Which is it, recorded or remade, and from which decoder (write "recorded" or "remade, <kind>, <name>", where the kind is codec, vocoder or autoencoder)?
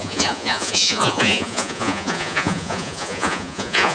remade, vocoder, Vocos